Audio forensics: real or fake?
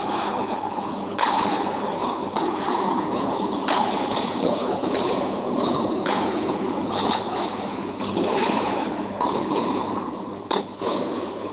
fake